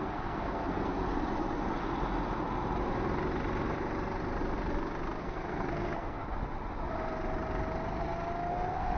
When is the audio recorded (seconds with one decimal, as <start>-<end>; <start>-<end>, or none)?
1.0-5.2; 6.2-8.5